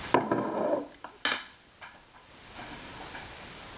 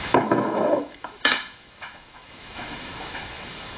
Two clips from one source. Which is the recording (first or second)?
first